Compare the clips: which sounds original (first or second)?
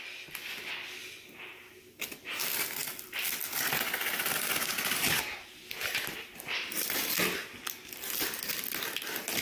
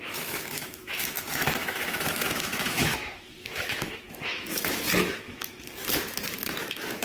first